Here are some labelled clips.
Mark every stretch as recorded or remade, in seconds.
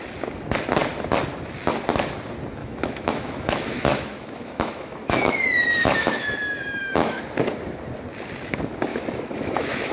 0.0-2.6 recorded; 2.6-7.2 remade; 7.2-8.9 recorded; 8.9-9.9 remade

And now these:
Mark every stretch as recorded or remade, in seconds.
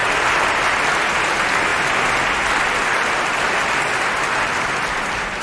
0.0-5.4 recorded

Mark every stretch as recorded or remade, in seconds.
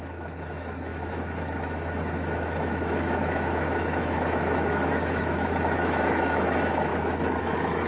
0.0-6.9 remade; 6.9-7.4 recorded; 7.4-7.9 remade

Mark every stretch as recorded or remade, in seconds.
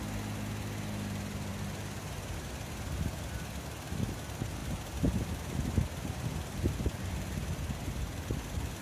0.0-8.8 recorded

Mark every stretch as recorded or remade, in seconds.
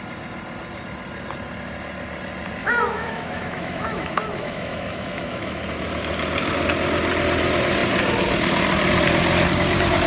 0.0-2.6 recorded; 2.6-5.6 remade; 5.6-10.1 recorded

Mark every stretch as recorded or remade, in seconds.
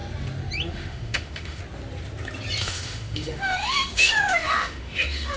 0.0-0.7 recorded; 0.7-1.6 remade; 1.6-2.6 recorded; 2.6-5.4 remade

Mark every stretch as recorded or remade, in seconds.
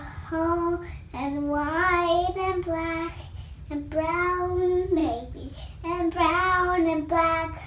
0.0-7.7 recorded